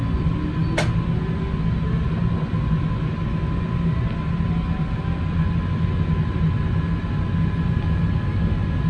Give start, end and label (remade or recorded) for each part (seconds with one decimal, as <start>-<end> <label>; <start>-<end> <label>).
0.0-8.9 recorded